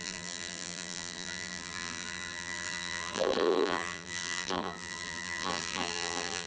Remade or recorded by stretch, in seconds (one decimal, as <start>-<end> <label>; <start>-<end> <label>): 0.0-6.5 remade